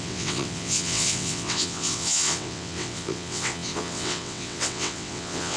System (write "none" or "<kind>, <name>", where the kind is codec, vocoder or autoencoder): vocoder, WaveNeXt